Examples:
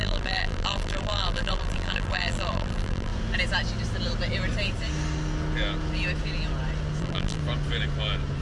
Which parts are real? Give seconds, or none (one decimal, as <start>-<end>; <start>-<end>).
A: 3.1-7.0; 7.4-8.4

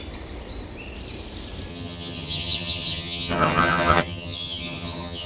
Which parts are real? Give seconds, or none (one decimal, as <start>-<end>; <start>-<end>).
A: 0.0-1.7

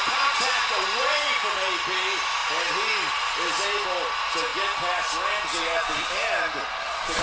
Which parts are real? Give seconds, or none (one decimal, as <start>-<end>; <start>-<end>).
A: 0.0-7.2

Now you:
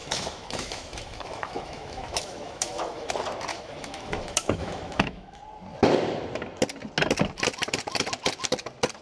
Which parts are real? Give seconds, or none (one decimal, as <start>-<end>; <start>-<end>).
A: 3.1-3.5; 5.4-9.0

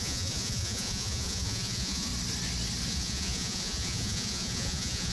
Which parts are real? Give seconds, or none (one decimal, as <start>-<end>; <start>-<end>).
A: 2.1-2.9